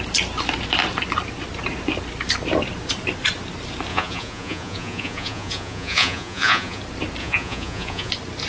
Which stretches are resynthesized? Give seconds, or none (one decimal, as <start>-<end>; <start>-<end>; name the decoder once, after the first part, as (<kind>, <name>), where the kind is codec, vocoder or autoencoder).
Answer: 3.9-6.8 (vocoder, Vocos); 7.2-8.1